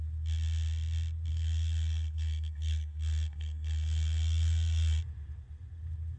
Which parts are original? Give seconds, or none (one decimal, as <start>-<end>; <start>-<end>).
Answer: 0.0-1.3; 5.0-6.2